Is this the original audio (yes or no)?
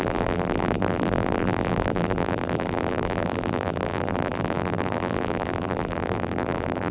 no